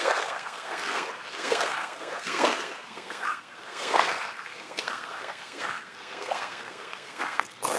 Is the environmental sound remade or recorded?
remade